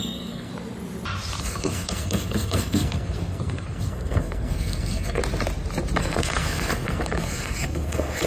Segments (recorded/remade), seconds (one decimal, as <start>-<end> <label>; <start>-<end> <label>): 0.0-0.5 remade; 0.5-1.4 recorded; 1.4-5.2 remade; 5.2-6.0 recorded; 6.0-8.3 remade